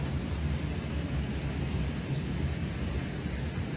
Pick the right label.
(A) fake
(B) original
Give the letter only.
B